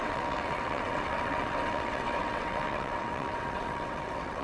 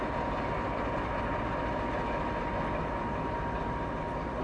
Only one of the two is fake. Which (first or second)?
first